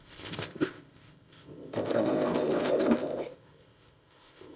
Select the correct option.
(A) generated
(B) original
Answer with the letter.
A